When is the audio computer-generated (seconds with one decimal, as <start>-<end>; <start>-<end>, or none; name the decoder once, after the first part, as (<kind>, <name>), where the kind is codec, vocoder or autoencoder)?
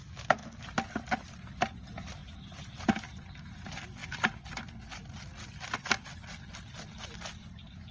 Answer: none